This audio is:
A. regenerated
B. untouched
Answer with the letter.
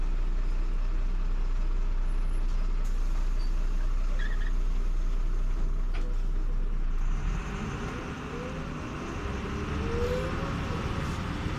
B